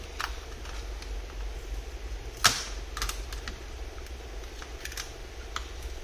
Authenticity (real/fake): real